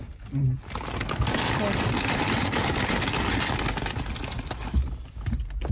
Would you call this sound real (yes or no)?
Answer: yes